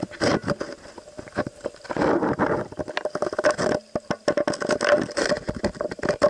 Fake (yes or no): no